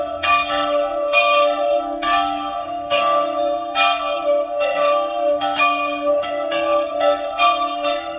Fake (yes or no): yes